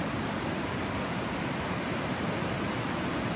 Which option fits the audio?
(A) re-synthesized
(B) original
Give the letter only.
B